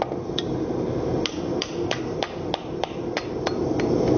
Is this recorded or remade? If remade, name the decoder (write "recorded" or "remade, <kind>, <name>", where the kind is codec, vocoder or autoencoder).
recorded